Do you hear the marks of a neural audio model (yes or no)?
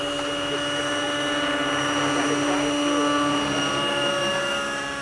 no